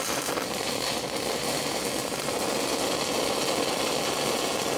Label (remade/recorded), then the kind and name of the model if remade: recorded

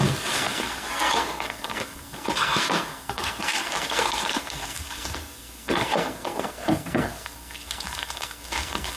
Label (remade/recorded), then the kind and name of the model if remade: remade, codec, SNAC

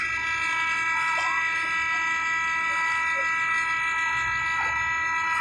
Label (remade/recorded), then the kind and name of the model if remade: recorded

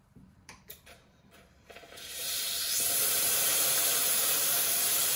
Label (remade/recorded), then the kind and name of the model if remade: remade, vocoder, BigVGAN v2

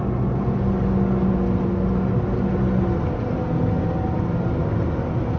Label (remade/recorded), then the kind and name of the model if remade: recorded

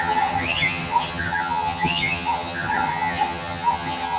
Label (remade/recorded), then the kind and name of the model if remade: remade, vocoder, HiFi-GAN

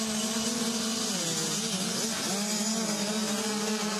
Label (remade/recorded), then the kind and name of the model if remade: recorded